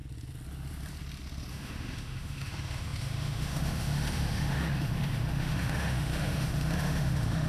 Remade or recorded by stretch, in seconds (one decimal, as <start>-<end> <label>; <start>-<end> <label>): 0.0-1.5 recorded; 1.5-7.5 remade